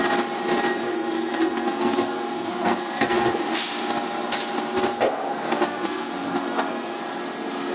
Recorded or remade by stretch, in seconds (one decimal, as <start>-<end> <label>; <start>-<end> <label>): 0.0-0.8 recorded; 0.8-3.4 remade; 3.4-4.9 recorded; 4.9-7.0 remade; 7.0-7.7 recorded